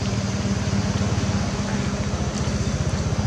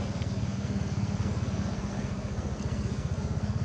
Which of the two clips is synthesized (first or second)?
second